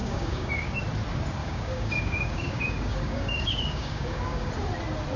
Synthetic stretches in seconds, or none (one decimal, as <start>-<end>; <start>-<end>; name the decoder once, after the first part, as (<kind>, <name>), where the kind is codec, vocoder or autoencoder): 0.0-0.8 (codec, DAC); 1.4-4.5

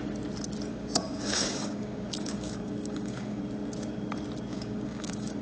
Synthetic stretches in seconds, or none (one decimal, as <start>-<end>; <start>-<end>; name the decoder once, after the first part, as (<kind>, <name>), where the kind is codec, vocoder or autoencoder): 0.7-3.4 (codec, DAC); 4.5-5.4

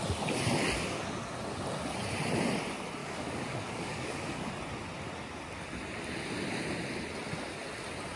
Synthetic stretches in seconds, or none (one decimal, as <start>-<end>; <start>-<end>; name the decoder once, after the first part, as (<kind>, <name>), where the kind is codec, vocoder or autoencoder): 3.0-4.5 (codec, DAC)